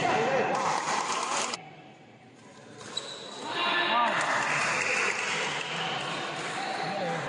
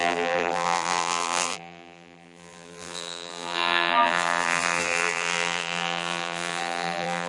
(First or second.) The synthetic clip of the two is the second